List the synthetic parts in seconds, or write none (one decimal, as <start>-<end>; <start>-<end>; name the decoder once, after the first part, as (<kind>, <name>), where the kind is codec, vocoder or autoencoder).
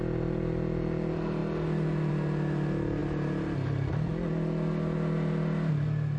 none